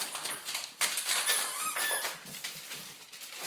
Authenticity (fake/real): fake